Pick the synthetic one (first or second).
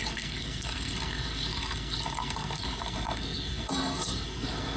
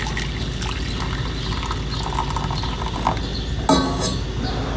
first